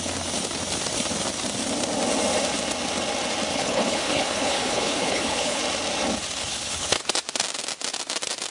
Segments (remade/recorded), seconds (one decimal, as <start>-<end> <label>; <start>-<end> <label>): 0.0-3.5 recorded; 3.5-5.6 remade; 5.6-6.4 recorded; 6.4-7.0 remade; 7.0-8.5 recorded